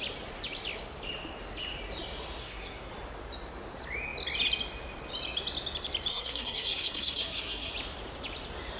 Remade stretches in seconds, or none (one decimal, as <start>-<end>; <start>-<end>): 2.4-2.9; 6.1-7.7